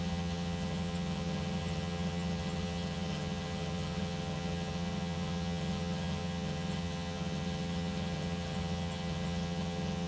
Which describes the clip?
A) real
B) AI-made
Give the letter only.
B